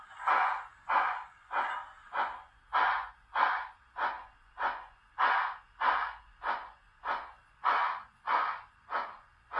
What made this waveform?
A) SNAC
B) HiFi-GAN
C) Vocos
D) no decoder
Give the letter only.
C